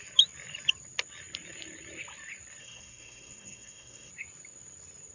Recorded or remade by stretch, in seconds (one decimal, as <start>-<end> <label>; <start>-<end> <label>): 0.0-2.6 recorded; 2.6-4.1 remade; 4.1-5.1 recorded